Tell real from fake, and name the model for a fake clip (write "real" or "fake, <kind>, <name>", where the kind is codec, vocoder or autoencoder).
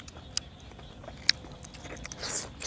real